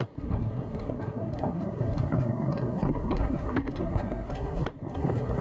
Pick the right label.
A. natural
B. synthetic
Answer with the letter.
B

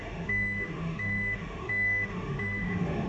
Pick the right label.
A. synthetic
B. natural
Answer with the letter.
A